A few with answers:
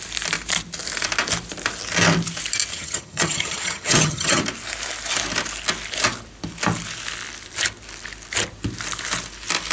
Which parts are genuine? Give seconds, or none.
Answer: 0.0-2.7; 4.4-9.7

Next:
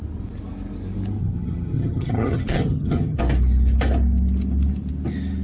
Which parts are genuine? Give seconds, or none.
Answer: 0.0-1.2; 3.2-5.4

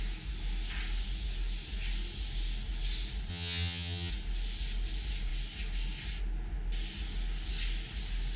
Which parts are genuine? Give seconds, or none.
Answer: 0.0-3.3; 4.1-8.4

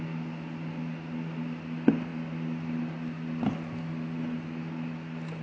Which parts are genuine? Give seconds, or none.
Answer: 0.0-5.4